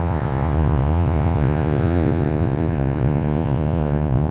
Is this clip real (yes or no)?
no